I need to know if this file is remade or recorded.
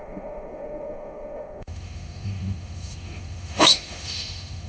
remade